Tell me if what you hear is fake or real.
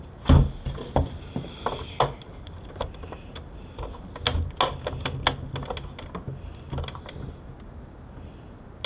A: real